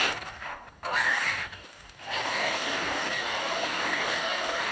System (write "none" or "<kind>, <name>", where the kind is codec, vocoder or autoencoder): codec, DAC